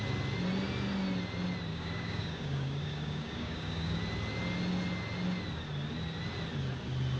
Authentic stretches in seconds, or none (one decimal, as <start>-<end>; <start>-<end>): 0.0-1.7; 4.0-7.2

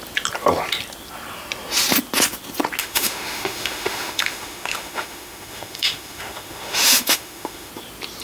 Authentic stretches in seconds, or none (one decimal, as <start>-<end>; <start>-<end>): 0.0-2.8; 7.7-8.2